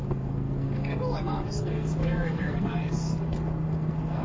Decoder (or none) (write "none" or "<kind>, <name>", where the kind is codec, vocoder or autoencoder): codec, SNAC